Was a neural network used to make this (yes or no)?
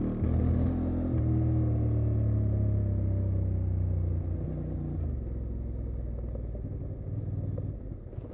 no